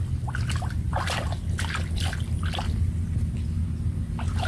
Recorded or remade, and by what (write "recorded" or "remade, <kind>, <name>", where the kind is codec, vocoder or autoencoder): recorded